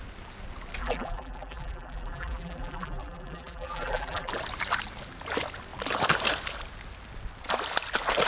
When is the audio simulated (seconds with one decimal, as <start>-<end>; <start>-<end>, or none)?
0.8-4.3